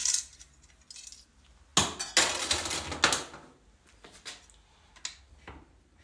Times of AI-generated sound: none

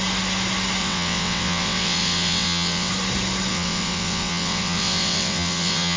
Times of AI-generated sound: 0.8-2.9; 3.5-6.0

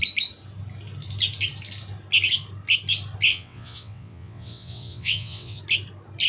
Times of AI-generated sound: 3.3-5.6